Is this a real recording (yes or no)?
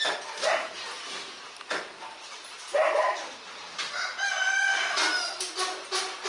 yes